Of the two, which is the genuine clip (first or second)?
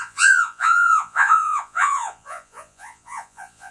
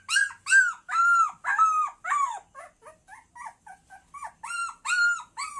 second